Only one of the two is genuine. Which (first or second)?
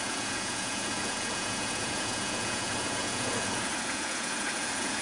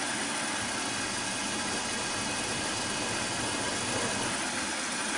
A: second